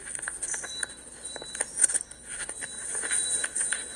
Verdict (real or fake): real